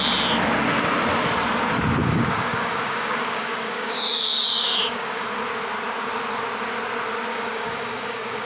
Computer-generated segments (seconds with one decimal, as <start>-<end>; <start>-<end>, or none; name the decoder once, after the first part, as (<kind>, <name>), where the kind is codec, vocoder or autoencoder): 2.0-5.3 (codec, DAC); 7.3-8.4